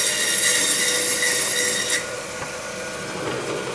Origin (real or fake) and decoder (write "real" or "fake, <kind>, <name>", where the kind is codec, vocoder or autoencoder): real